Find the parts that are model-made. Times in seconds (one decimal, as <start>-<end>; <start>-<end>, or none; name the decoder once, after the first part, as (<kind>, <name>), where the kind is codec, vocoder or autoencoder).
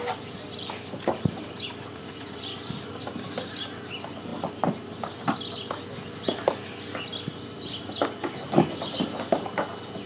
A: 1.9-2.4 (vocoder, Vocos)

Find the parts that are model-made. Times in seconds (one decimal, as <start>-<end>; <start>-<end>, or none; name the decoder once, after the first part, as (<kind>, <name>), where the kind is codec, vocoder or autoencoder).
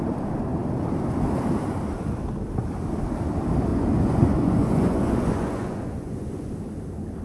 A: 3.7-6.5 (vocoder, Vocos)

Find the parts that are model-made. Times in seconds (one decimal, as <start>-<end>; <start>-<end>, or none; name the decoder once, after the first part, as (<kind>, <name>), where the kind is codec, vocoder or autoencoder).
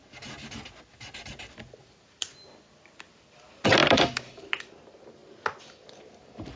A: none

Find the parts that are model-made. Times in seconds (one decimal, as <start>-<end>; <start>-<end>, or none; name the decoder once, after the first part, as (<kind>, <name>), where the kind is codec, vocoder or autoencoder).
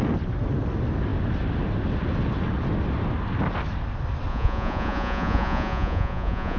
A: 4.3-6.6 (vocoder, Vocos)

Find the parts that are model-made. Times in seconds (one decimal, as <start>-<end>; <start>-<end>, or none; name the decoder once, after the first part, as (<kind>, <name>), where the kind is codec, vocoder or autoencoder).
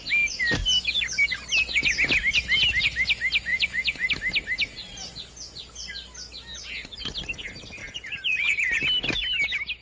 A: 3.5-4.1 (vocoder, Vocos); 7.8-8.8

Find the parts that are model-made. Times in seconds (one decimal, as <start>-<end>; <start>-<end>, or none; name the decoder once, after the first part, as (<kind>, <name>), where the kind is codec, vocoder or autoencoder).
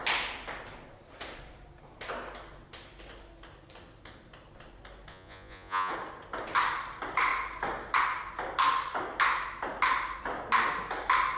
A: 5.1-5.9 (vocoder, Vocos)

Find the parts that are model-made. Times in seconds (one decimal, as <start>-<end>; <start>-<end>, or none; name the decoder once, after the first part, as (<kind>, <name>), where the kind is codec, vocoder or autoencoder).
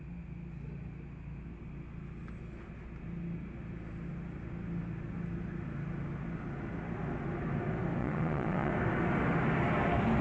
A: 8.0-8.7 (vocoder, Vocos)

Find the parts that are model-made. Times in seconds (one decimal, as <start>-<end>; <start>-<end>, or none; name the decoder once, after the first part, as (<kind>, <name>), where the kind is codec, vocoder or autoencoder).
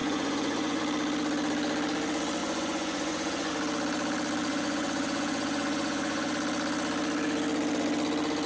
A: 0.0-0.8 (vocoder, Vocos); 2.4-3.5; 4.5-6.3